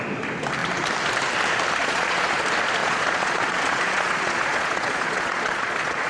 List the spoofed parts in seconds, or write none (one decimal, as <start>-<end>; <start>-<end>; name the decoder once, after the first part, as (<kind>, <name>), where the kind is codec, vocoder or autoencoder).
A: 1.8-2.4 (vocoder, Vocos); 2.8-6.1